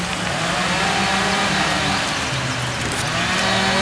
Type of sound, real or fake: real